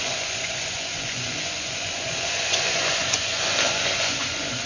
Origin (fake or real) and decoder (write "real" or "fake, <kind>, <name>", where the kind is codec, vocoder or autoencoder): fake, vocoder, Vocos